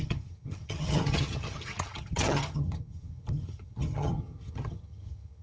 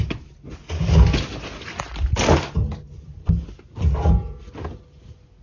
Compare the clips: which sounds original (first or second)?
second